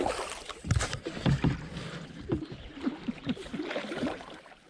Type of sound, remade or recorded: recorded